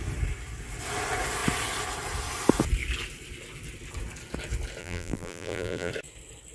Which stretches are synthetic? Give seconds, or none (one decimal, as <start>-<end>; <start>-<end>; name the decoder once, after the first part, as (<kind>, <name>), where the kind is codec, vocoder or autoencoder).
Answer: 4.8-5.9 (vocoder, BigVGAN v2)